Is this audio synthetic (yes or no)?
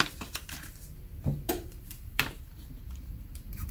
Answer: yes